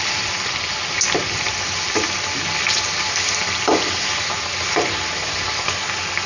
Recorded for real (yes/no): yes